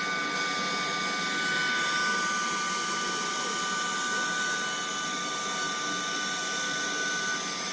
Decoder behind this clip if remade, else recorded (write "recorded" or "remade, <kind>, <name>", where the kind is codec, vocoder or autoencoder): recorded